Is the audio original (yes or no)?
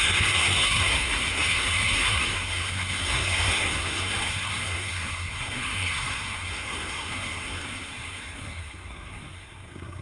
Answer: no